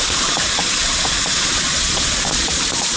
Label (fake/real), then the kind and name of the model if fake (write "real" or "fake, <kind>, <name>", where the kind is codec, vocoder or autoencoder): fake, vocoder, Vocos